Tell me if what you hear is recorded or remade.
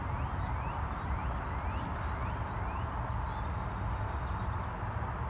recorded